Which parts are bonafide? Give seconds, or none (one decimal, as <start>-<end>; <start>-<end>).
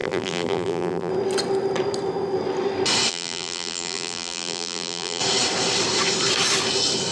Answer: 1.1-3.1; 5.2-7.1